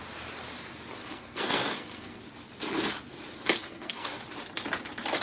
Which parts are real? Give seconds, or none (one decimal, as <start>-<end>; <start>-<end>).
0.0-1.0; 2.2-3.6; 4.2-5.2